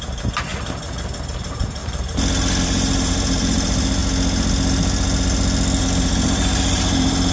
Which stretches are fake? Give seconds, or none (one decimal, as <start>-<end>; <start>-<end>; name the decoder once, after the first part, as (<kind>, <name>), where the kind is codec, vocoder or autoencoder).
0.0-0.5 (vocoder, BigVGAN v2); 1.2-1.8; 2.6-4.0; 5.8-7.3